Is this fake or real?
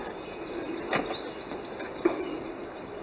real